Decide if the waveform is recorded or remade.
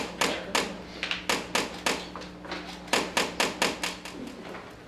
recorded